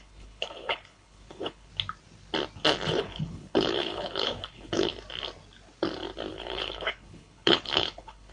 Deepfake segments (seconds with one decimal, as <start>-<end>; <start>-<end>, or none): 0.0-1.7; 3.0-4.9; 6.3-8.3